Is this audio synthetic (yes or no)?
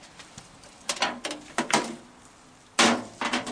no